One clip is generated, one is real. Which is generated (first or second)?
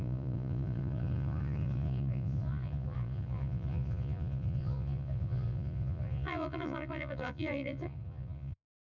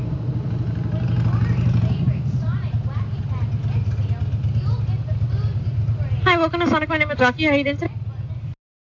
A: first